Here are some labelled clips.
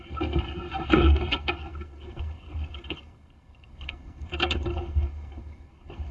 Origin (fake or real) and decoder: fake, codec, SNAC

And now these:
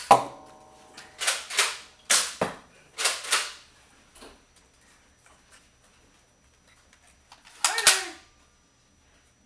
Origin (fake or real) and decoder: real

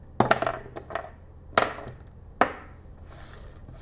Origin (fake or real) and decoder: real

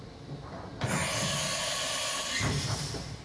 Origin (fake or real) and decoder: real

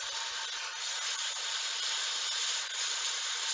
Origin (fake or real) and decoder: real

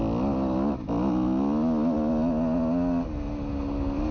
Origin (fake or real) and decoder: real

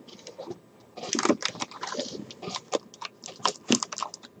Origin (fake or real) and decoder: fake, vocoder, BigVGAN v2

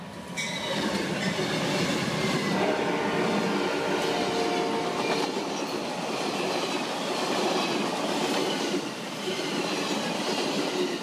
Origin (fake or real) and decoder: real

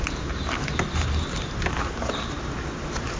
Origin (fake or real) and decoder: real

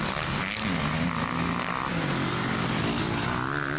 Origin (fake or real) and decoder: real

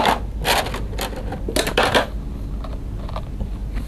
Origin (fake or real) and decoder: real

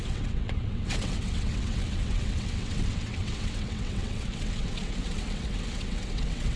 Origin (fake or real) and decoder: fake, vocoder, WaveNeXt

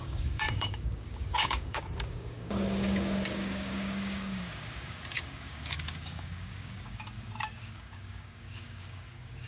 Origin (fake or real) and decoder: fake, codec, DAC